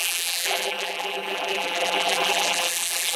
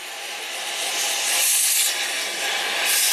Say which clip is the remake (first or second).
first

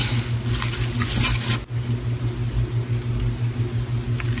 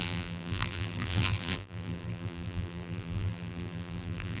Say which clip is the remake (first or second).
second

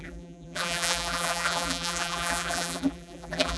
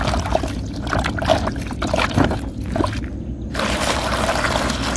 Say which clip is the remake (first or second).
first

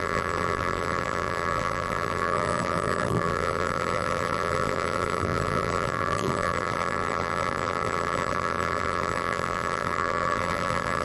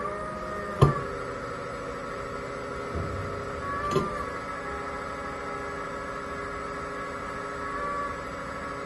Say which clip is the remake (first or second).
first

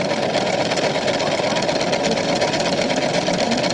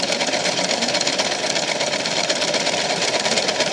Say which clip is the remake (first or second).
second